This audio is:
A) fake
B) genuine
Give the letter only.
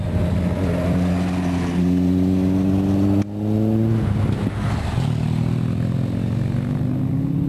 B